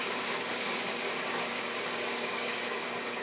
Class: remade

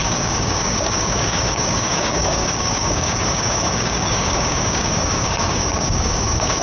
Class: remade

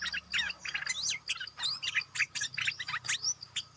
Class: recorded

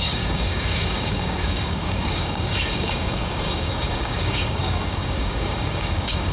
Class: remade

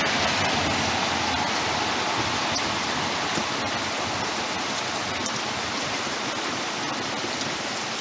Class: recorded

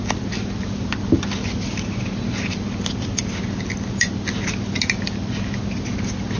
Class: recorded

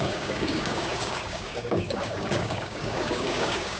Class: remade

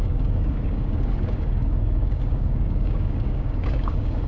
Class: remade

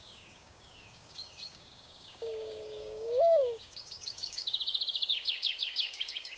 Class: remade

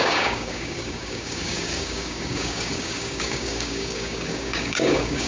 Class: remade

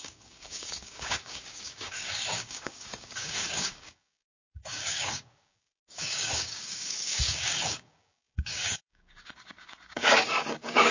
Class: remade